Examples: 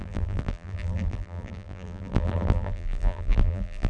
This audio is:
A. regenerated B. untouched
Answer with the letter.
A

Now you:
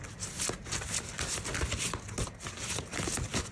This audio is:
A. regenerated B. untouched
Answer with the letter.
B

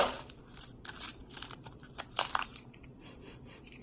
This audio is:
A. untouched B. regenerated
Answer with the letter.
B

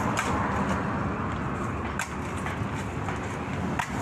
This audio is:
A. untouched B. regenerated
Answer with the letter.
A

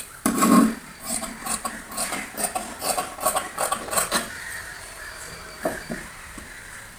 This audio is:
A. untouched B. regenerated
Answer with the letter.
B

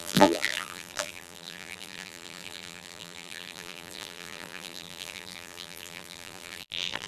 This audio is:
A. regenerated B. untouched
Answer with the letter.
A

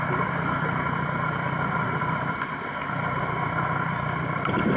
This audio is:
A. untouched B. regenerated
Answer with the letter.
B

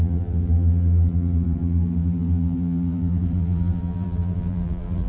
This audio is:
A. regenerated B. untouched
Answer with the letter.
A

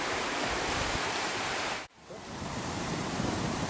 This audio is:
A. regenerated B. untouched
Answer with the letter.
A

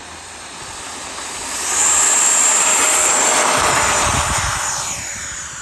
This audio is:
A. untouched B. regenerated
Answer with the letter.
B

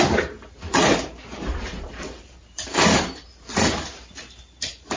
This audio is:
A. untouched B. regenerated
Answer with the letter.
B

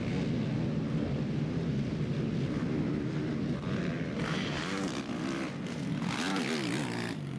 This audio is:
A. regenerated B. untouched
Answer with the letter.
B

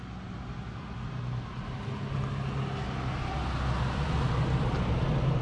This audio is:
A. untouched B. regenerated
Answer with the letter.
A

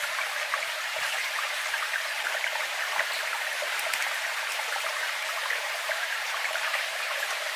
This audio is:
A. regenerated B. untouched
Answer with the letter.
A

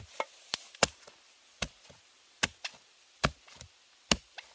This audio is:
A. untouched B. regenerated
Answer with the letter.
A